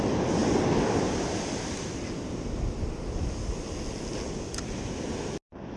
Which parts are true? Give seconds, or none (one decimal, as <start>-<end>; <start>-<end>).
0.0-5.8